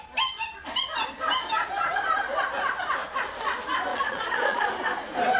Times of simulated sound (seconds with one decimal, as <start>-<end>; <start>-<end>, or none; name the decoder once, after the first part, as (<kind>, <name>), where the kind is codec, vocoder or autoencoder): 3.9-4.7 (vocoder, Vocos)